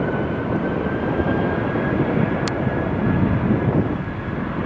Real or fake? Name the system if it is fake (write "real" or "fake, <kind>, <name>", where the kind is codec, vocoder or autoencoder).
real